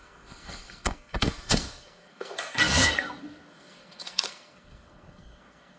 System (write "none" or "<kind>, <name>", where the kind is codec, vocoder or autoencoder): codec, SNAC